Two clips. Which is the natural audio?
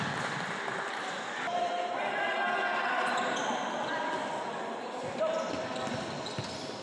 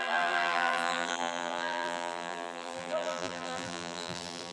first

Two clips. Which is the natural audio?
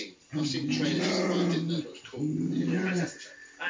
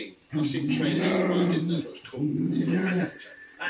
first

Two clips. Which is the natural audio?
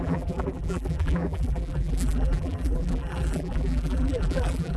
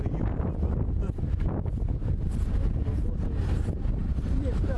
second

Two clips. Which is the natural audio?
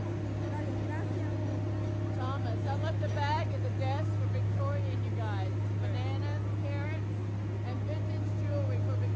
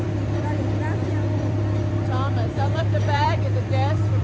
first